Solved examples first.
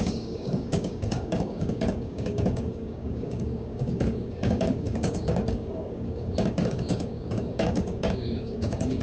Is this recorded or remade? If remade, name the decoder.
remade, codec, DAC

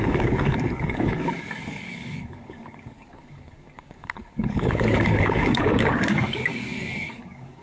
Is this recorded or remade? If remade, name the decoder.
remade, codec, DAC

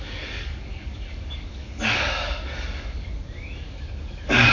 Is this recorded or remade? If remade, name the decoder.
remade, codec, DAC